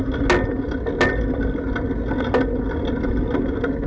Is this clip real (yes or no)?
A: yes